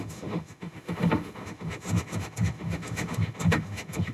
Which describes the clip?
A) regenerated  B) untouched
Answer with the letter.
A